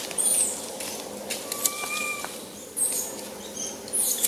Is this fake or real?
real